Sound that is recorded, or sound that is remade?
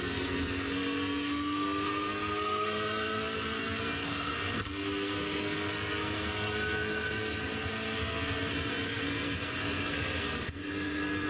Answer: remade